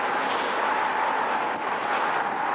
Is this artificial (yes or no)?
no